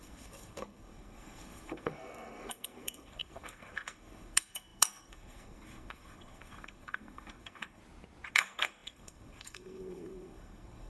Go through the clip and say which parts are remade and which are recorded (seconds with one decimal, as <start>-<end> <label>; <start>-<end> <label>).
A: 0.0-7.8 remade; 7.8-8.3 recorded; 8.3-10.9 remade